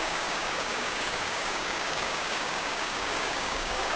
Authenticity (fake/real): fake